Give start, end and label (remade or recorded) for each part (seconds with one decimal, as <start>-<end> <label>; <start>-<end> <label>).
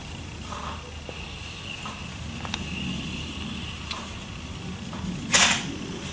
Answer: 0.0-0.6 remade; 0.6-2.9 recorded; 2.9-6.1 remade